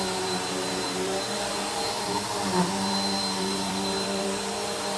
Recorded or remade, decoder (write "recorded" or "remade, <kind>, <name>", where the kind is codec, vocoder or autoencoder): remade, vocoder, BigVGAN v2